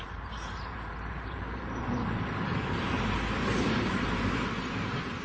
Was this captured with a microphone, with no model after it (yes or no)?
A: no